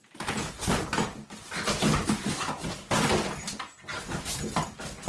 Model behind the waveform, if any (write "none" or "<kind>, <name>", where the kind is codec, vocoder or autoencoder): none